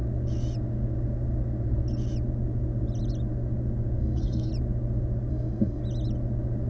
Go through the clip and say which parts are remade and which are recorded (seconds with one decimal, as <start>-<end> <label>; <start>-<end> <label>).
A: 0.0-4.0 recorded; 4.0-4.5 remade; 4.5-5.3 recorded; 5.3-5.8 remade; 5.8-6.7 recorded

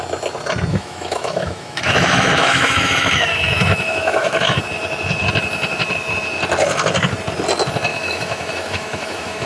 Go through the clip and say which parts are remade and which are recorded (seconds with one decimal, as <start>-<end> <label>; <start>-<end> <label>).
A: 0.0-0.7 recorded; 0.7-4.6 remade; 4.6-7.9 recorded; 7.9-9.5 remade

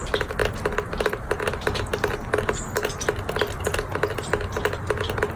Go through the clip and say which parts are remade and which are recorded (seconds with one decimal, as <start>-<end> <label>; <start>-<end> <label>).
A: 0.0-5.4 recorded

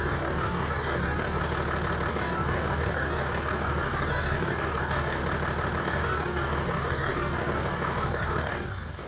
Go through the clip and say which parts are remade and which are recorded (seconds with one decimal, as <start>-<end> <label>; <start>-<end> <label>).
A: 0.0-1.4 remade; 1.4-2.1 recorded; 2.1-5.2 remade; 5.2-5.8 recorded; 5.8-9.1 remade

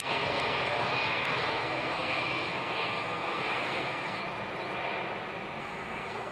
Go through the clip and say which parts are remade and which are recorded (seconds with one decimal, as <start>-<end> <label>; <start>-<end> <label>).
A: 0.0-4.2 remade; 4.2-5.6 recorded; 5.6-6.3 remade

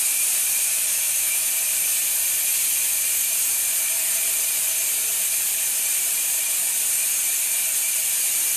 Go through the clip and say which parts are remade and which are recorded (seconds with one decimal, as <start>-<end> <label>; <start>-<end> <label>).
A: 0.0-0.9 recorded; 0.9-1.5 remade; 1.5-8.6 recorded